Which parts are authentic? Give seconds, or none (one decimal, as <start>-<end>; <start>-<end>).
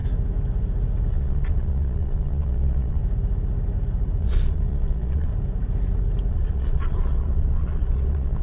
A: 0.0-1.1; 3.0-4.2; 5.3-6.3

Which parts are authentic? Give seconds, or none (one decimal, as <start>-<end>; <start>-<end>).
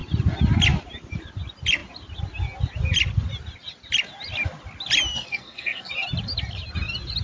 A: 0.0-5.1; 5.9-7.2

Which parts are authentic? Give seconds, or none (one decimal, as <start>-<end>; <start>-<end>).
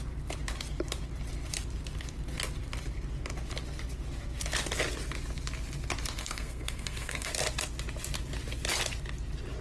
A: 0.0-6.2; 7.3-9.6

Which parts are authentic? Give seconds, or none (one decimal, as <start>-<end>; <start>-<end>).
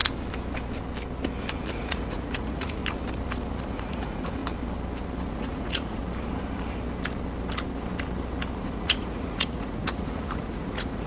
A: 0.0-1.7; 2.8-3.7; 4.4-5.3; 6.0-8.6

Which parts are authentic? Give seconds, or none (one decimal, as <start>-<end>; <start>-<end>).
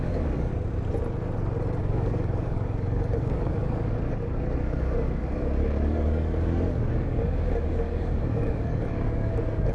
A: 0.5-1.8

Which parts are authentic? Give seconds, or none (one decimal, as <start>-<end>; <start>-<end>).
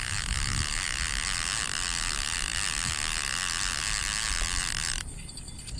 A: 0.0-5.8